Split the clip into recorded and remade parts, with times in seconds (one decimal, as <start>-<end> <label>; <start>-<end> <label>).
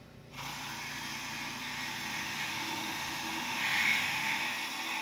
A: 0.0-2.1 recorded; 2.1-4.4 remade; 4.4-5.0 recorded